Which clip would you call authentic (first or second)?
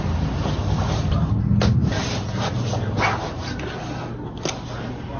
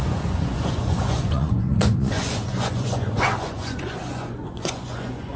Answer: first